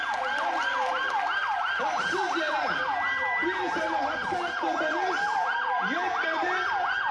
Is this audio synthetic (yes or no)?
no